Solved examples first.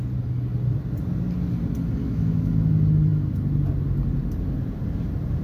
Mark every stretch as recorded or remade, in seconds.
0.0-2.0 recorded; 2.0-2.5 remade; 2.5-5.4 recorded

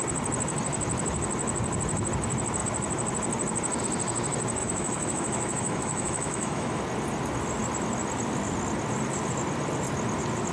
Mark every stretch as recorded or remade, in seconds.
0.0-4.6 recorded; 4.6-6.8 remade; 6.8-10.5 recorded

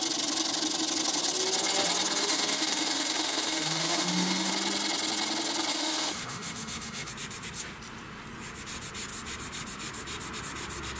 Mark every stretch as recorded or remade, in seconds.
0.0-2.2 recorded; 2.2-4.5 remade; 4.5-5.7 recorded; 5.7-7.1 remade; 7.1-11.0 recorded